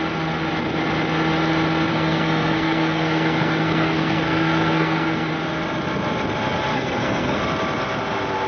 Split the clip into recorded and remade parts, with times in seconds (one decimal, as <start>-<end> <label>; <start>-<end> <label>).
0.0-1.9 recorded; 1.9-5.3 remade; 5.3-6.7 recorded; 6.7-7.4 remade; 7.4-8.5 recorded